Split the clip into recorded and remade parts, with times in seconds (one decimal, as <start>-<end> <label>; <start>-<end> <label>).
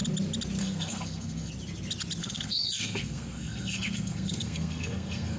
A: 0.0-0.6 recorded; 0.6-1.5 remade; 1.5-2.2 recorded; 2.2-5.4 remade